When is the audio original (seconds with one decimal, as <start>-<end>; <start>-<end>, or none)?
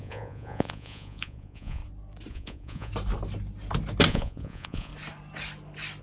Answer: 1.8-2.3; 2.9-4.1; 4.9-6.0